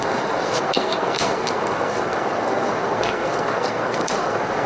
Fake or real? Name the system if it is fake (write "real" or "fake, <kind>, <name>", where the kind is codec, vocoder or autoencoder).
fake, codec, SNAC